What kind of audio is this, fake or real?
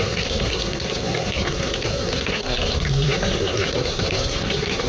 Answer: fake